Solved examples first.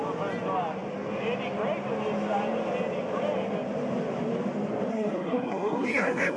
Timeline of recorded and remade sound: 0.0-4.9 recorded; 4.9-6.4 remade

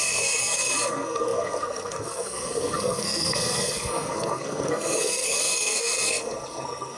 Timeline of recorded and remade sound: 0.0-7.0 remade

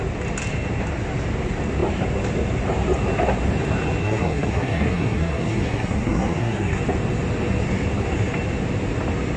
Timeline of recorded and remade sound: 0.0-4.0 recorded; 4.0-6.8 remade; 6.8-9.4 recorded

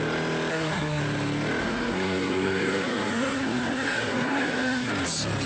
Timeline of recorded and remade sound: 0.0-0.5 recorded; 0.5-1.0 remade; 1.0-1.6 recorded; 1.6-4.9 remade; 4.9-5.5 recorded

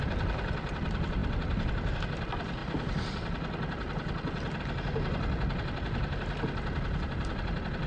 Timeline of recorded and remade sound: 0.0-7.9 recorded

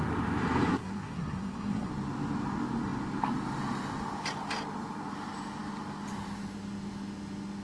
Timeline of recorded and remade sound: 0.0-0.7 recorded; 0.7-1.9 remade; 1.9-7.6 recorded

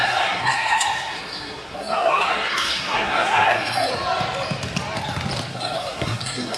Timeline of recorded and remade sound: 0.0-3.9 remade; 3.9-5.5 recorded; 5.5-6.6 remade

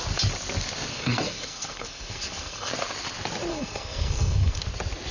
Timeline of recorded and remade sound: 0.0-0.9 recorded; 0.9-2.7 remade; 2.7-3.5 recorded; 3.5-4.6 remade; 4.6-5.1 recorded